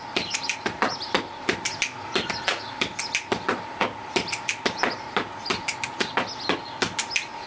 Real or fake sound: real